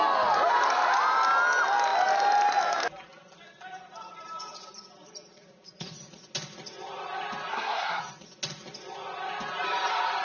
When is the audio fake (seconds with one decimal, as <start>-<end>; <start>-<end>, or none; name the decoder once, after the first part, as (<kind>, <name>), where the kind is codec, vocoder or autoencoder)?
7.5-8.0 (codec, SNAC)